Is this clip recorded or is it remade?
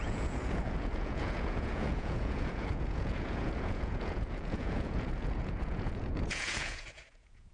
remade